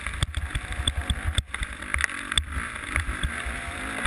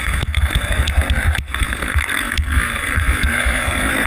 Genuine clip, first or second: first